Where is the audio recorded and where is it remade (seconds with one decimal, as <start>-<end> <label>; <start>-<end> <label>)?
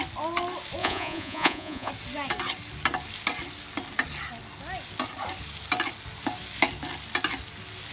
0.0-0.8 recorded; 0.8-1.9 remade; 1.9-7.9 recorded